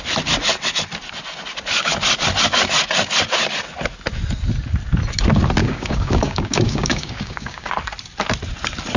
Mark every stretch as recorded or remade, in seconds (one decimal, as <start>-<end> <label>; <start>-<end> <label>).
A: 0.0-5.6 recorded; 5.6-7.7 remade; 7.7-9.0 recorded